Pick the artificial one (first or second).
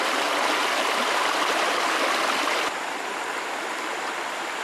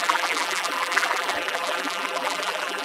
second